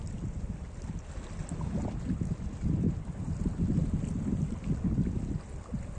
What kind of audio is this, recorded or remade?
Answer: recorded